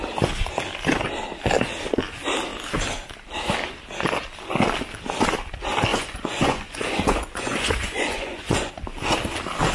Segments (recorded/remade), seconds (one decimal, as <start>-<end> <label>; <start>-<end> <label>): 0.0-5.9 recorded; 5.9-8.7 remade; 8.7-9.7 recorded